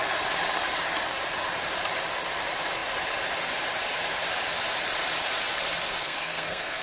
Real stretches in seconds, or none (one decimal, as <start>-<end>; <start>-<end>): 0.0-6.0